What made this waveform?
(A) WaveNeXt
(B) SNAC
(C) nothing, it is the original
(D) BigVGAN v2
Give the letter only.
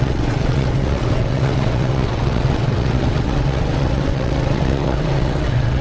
A